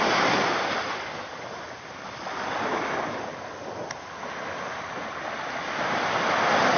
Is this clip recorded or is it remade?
recorded